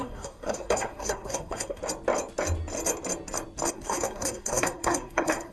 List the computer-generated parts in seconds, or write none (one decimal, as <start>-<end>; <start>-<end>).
0.0-1.8; 3.7-5.5